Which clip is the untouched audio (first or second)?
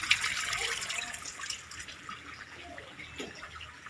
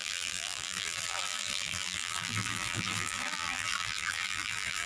first